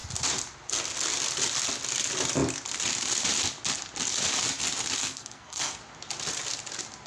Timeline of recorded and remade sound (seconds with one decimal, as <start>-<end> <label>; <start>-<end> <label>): 0.0-5.0 recorded; 5.0-5.8 remade; 5.8-7.1 recorded